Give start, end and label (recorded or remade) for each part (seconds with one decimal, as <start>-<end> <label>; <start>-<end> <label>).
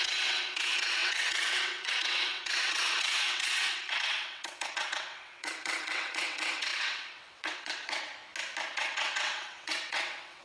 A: 0.0-8.1 remade; 8.1-8.7 recorded; 8.7-10.4 remade